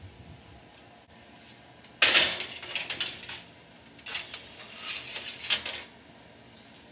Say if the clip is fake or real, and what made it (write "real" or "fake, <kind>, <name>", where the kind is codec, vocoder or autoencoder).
real